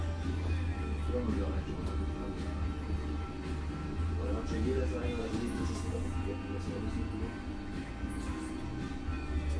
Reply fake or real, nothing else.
real